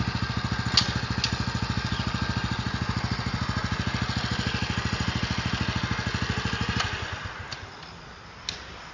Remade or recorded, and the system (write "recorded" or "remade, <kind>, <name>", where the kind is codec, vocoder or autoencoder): recorded